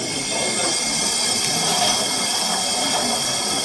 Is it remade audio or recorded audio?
recorded